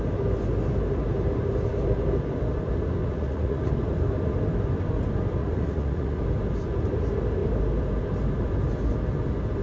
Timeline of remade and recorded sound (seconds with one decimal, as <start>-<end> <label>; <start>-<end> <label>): 0.0-3.0 recorded; 3.0-3.7 remade; 3.7-5.4 recorded; 5.4-6.2 remade; 6.2-9.6 recorded